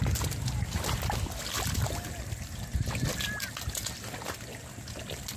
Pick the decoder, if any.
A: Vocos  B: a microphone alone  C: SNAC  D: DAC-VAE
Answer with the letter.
B